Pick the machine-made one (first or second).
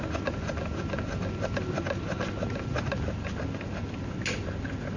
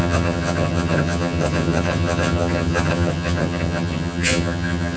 second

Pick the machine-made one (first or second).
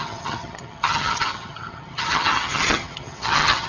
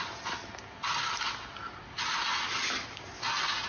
first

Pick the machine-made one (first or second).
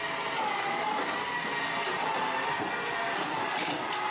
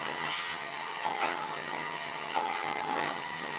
second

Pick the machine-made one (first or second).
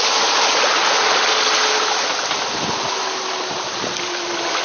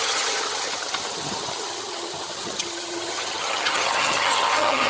second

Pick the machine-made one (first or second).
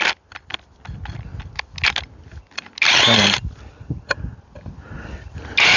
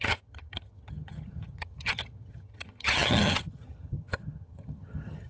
second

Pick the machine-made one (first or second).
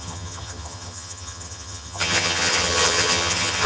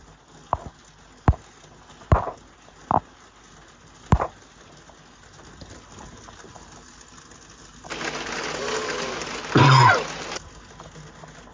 first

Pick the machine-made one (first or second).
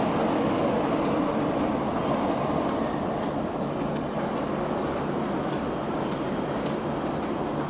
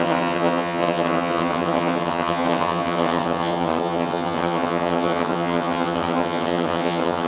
second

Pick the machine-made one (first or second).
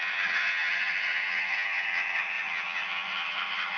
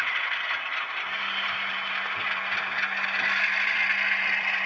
first